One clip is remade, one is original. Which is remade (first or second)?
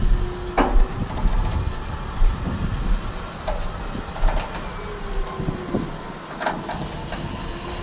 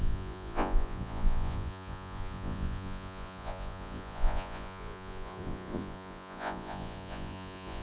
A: second